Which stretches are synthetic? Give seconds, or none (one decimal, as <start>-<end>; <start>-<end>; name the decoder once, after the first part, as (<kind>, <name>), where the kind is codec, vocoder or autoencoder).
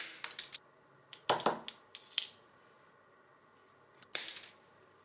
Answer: none